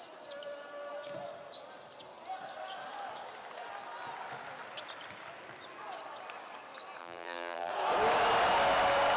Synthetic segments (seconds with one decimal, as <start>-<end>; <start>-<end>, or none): 7.0-7.7